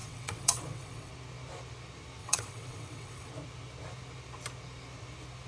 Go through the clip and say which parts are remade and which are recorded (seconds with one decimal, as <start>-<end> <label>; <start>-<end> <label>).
0.0-1.1 remade; 1.1-2.2 recorded; 2.2-3.3 remade; 3.3-5.5 recorded